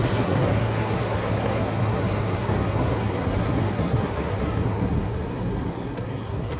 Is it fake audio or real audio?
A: fake